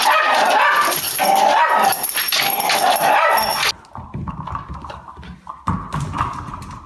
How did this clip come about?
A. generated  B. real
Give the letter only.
B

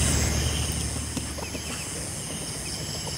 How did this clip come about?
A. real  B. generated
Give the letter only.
A